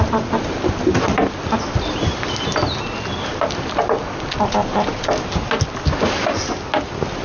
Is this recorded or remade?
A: recorded